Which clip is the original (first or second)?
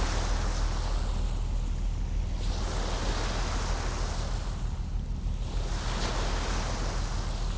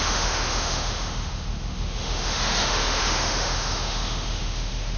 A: first